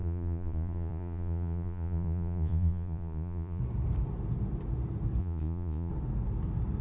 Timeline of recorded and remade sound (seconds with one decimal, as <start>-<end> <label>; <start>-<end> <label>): 0.0-3.6 remade; 3.6-5.2 recorded; 5.2-5.9 remade; 5.9-6.8 recorded